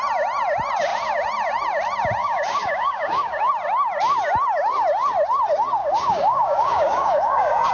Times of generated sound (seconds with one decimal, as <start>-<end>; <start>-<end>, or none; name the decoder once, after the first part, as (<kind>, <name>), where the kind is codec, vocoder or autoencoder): 2.2-3.5 (codec, DAC); 5.8-7.7